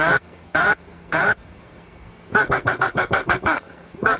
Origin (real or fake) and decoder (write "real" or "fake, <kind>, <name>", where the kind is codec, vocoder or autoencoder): fake, codec, SNAC